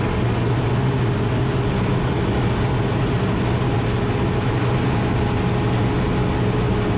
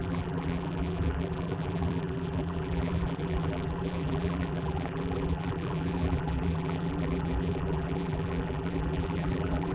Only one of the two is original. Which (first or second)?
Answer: first